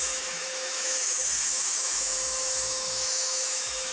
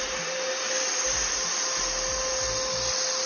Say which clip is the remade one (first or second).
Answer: first